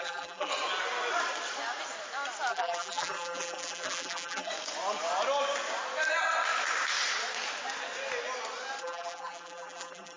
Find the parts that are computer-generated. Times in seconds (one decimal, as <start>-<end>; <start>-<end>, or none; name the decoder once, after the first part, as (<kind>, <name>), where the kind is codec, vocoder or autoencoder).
0.0-0.5 (vocoder, BigVGAN v2); 2.5-4.5; 8.8-10.2